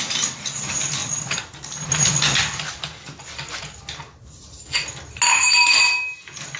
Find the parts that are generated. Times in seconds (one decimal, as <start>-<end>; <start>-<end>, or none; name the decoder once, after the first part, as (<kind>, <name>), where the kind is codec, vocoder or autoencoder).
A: none